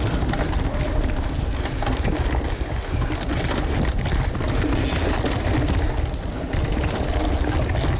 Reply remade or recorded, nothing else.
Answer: recorded